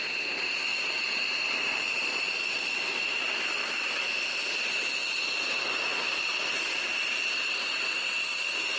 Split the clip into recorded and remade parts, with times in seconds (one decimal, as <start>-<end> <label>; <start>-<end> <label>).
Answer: 0.0-0.7 recorded; 0.7-3.9 remade; 3.9-5.9 recorded; 5.9-6.4 remade; 6.4-8.8 recorded